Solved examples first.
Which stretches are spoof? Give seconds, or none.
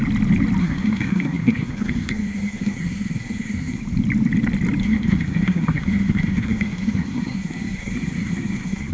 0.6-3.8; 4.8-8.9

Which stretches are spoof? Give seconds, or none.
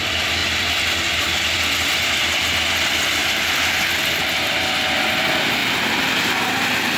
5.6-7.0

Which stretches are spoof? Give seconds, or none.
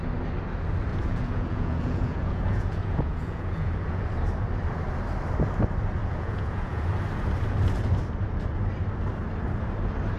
0.9-4.0; 6.0-6.9